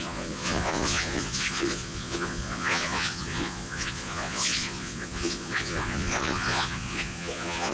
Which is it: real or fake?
fake